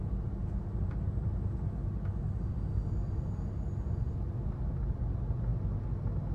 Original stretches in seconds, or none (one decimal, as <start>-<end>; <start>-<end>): 0.0-6.3